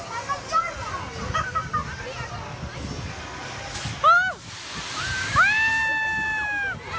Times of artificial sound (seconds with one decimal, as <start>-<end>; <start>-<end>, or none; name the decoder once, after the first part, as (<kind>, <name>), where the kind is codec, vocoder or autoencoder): 5.2-5.7 (codec, DAC)